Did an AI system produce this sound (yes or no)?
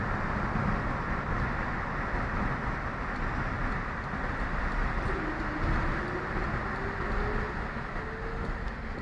no